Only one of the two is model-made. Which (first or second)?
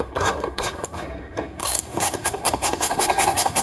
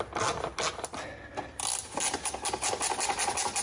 first